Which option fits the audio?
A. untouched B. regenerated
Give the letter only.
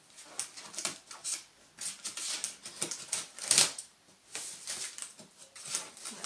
A